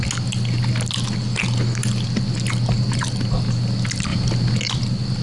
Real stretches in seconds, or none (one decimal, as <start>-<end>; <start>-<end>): 0.0-5.2